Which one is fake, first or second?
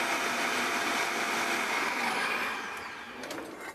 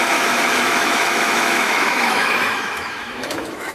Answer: second